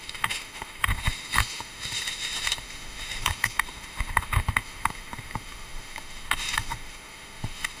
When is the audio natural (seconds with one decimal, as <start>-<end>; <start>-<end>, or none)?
none